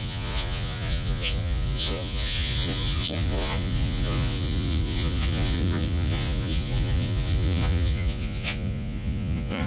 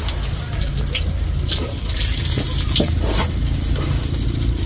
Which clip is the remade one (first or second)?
first